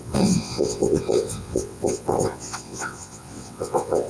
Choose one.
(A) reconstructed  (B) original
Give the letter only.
A